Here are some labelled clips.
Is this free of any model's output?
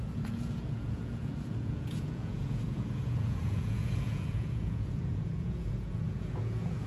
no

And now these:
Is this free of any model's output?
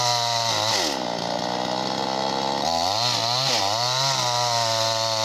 yes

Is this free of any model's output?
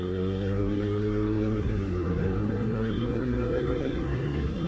no